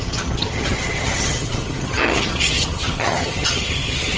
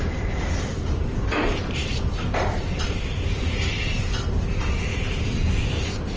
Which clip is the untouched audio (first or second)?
second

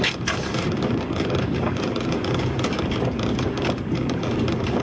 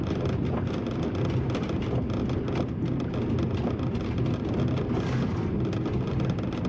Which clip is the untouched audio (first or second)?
second